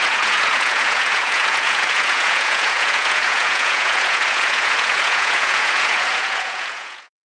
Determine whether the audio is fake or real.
fake